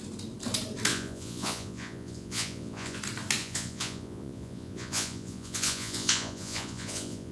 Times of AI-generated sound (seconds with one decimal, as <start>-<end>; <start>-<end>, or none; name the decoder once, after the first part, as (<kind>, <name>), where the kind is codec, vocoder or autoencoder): 0.9-3.0 (vocoder, Vocos); 3.4-7.3